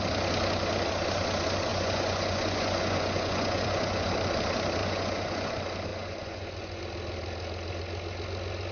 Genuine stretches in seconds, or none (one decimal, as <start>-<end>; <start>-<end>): 0.0-1.7; 4.1-4.8; 5.5-5.9; 6.8-8.7